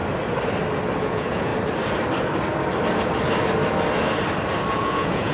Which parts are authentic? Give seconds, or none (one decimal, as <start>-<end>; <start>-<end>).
0.0-1.0; 1.5-4.7